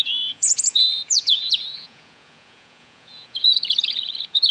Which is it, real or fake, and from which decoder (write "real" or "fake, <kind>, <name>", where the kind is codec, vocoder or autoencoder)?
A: fake, vocoder, Vocos